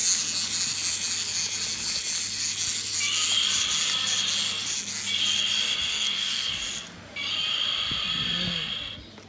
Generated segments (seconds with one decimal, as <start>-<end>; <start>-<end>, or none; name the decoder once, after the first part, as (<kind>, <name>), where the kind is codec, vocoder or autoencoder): 5.9-6.5 (codec, SNAC)